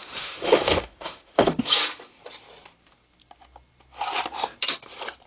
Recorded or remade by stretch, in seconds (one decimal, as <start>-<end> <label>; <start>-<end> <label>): 0.0-1.6 remade; 1.6-5.3 recorded